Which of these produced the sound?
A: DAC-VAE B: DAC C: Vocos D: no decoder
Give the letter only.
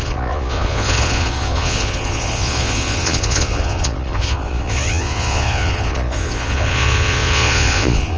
C